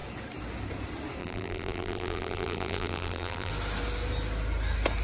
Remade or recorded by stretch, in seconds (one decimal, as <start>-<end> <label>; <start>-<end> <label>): 0.0-1.2 recorded; 1.2-3.5 remade; 3.5-5.0 recorded